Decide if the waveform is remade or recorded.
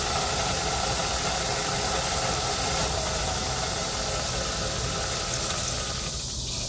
recorded